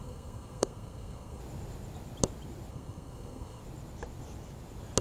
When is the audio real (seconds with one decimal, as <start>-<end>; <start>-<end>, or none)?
1.4-2.7; 3.6-5.0